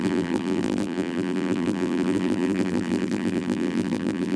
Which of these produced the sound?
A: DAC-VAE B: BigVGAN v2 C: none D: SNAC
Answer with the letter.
B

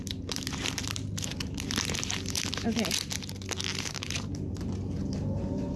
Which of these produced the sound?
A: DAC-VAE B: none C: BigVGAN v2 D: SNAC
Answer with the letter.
B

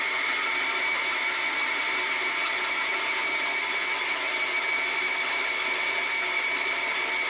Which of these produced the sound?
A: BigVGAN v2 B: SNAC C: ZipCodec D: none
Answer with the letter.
D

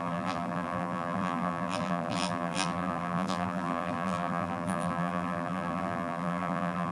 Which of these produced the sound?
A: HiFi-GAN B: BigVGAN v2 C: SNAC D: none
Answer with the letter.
B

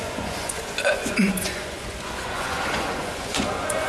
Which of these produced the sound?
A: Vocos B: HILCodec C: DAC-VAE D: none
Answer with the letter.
A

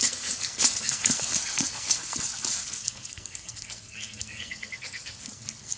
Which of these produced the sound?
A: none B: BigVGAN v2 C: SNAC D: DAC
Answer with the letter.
C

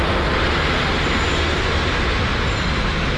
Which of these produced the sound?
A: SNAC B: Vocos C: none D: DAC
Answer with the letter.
C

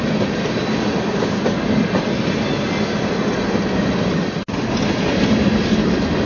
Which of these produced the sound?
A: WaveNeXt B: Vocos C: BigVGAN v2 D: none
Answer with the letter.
D